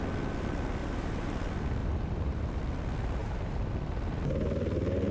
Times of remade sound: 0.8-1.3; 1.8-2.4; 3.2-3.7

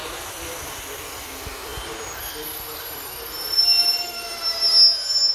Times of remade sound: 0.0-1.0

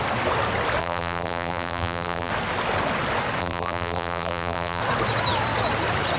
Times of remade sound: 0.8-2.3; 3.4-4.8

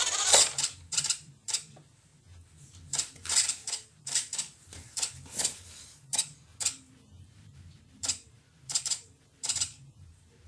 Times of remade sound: 0.0-2.1; 4.0-6.5; 7.2-10.5

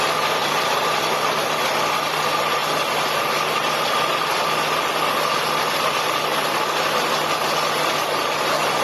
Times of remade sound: 0.4-1.0

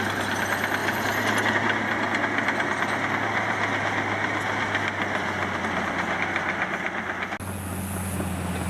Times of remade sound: none

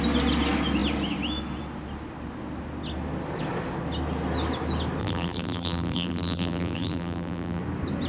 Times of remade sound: 5.0-7.6

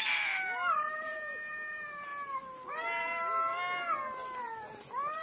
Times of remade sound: 0.0-2.1; 2.7-3.5; 4.4-5.2